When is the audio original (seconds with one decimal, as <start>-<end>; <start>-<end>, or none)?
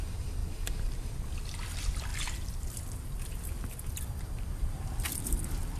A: 0.0-0.4; 1.6-2.1